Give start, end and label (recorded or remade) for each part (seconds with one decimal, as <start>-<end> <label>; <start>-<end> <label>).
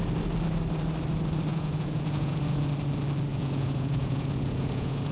0.0-1.5 recorded; 1.5-2.6 remade; 2.6-3.3 recorded; 3.3-5.1 remade